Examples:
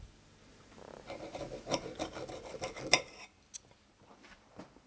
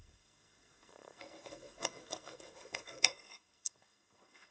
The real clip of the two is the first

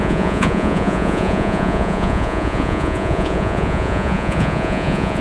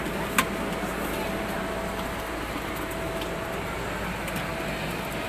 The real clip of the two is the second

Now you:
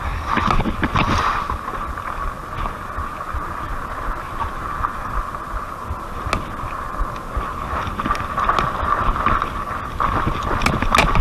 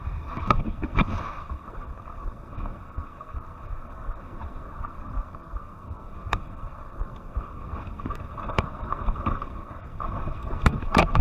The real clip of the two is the first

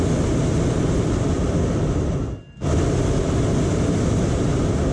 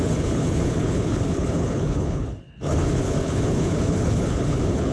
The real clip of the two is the first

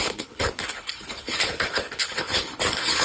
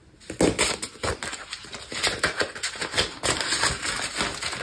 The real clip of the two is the second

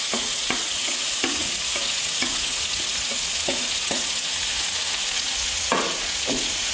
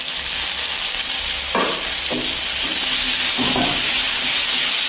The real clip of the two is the second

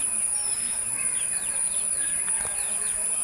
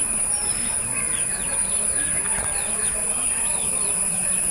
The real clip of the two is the first